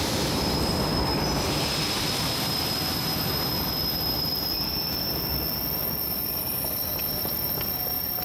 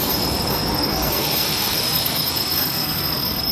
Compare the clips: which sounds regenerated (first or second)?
second